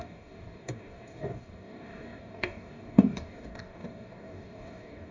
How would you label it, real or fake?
fake